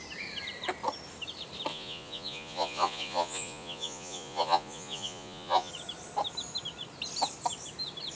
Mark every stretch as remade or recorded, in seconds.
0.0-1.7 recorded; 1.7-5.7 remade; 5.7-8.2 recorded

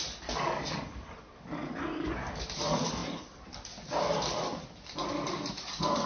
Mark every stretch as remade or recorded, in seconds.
0.0-3.0 recorded; 3.0-5.1 remade; 5.1-6.1 recorded